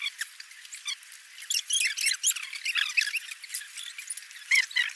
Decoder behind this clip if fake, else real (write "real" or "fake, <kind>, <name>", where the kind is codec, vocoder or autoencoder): real